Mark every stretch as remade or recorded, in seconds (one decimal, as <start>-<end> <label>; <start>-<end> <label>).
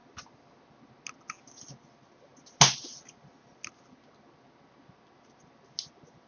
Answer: 0.0-6.3 recorded